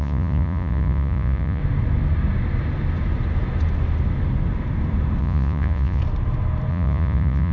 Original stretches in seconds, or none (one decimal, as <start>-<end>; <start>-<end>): 1.6-5.2; 6.0-6.7